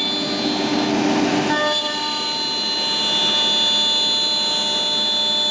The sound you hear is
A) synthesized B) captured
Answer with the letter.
B